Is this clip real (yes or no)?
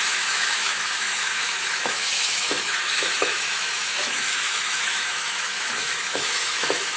no